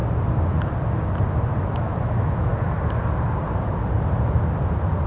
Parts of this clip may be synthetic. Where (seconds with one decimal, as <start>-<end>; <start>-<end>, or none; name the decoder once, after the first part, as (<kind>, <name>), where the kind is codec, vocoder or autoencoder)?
1.6-2.5 (autoencoder, DAC-VAE)